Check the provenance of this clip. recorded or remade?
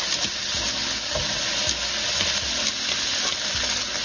recorded